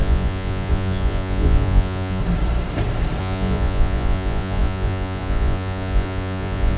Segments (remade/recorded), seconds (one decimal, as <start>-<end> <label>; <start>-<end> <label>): 0.0-2.2 remade; 2.2-3.2 recorded; 3.2-6.8 remade

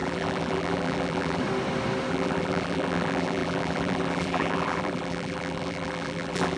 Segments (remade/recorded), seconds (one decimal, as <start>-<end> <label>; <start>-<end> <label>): 0.0-1.4 remade; 1.4-2.1 recorded; 2.1-6.6 remade

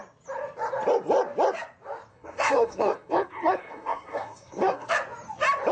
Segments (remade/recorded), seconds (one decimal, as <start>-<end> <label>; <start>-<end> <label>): 0.0-2.1 recorded; 2.1-4.9 remade; 4.9-5.7 recorded

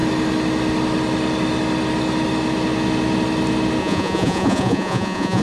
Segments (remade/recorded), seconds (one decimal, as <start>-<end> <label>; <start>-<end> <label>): 0.0-3.8 recorded; 3.8-5.4 remade

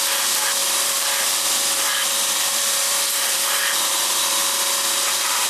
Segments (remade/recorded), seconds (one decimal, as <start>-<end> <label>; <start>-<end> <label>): 0.0-0.6 recorded; 0.6-3.9 remade; 3.9-5.5 recorded